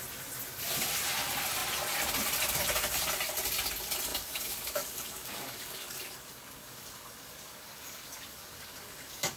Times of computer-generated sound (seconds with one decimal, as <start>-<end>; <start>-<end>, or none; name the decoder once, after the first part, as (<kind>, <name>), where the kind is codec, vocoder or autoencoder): 4.1-9.4 (codec, DAC)